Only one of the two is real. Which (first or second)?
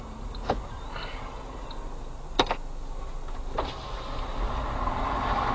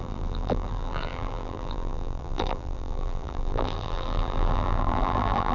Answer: first